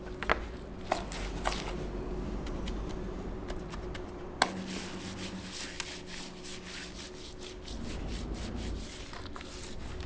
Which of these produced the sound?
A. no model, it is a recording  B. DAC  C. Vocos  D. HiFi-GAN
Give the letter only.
A